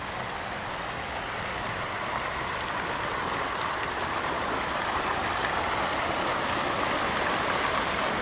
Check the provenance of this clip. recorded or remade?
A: recorded